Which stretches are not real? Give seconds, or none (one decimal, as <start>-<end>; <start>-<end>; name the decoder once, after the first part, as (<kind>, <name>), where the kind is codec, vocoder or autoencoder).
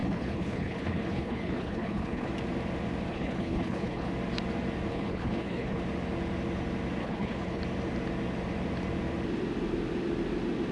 0.0-2.3 (codec, HILCodec); 3.1-4.1; 4.9-5.8; 7.0-7.6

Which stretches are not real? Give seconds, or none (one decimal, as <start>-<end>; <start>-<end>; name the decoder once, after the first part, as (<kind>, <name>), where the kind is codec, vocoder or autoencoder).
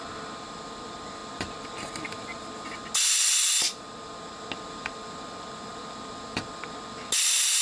none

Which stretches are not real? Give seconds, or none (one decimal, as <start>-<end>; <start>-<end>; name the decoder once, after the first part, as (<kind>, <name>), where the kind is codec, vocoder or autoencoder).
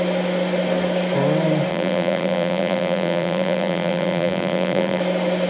1.7-5.0 (vocoder, BigVGAN v2)